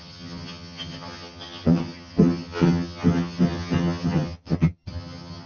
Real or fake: fake